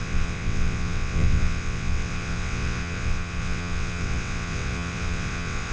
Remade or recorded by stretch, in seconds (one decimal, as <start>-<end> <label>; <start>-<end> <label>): 0.0-5.7 remade